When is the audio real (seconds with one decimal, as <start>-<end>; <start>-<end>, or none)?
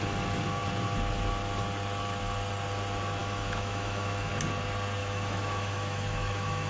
0.0-3.2; 4.3-5.0